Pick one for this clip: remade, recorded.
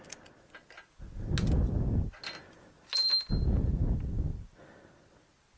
recorded